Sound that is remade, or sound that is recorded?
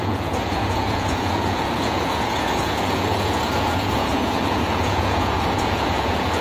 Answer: remade